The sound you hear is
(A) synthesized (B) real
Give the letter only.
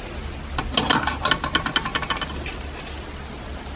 B